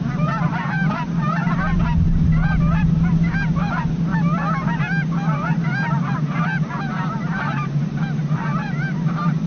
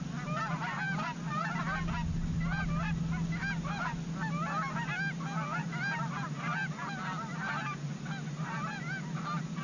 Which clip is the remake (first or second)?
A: first